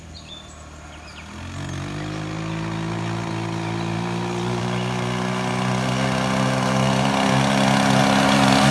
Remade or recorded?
recorded